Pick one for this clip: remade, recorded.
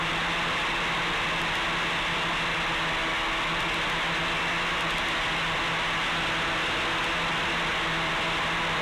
recorded